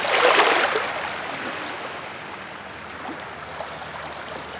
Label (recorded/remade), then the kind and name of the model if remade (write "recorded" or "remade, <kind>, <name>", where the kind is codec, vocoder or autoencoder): recorded